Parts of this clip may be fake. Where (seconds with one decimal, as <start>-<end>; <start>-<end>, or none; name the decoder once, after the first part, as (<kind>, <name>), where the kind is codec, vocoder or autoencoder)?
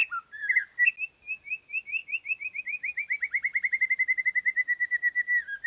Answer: 2.0-2.6 (vocoder, BigVGAN v2)